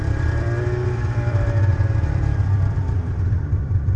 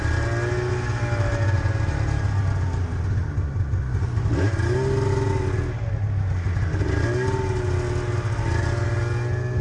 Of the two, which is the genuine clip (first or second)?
second